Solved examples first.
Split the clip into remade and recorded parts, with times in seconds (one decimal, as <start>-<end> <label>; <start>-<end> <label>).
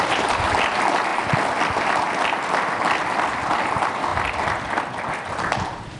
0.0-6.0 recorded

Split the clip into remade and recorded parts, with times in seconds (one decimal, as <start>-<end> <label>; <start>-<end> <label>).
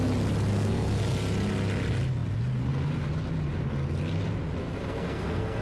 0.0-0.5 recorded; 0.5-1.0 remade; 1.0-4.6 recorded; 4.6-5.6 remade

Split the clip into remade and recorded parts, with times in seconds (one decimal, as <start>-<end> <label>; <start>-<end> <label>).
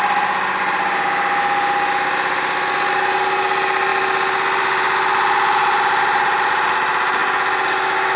0.0-8.2 recorded